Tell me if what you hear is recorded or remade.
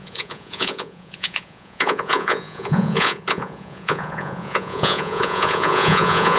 remade